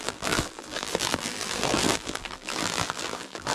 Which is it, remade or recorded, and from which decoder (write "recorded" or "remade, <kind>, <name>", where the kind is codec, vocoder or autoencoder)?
remade, vocoder, BigVGAN v2